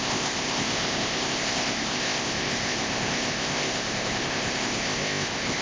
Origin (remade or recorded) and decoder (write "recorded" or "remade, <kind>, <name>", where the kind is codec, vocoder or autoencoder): remade, codec, ZipCodec